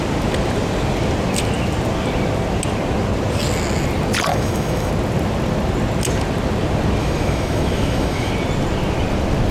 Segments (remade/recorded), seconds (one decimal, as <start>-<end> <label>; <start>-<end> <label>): 0.0-4.3 recorded; 4.3-4.9 remade; 4.9-7.0 recorded; 7.0-8.3 remade; 8.3-9.5 recorded